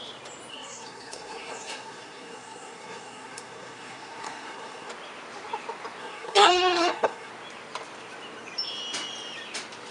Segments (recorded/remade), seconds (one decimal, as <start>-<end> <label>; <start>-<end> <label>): 0.0-0.5 recorded; 0.5-4.9 remade; 4.9-6.0 recorded; 6.0-7.3 remade; 7.3-9.9 recorded